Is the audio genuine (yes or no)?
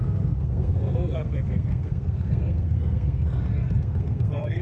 no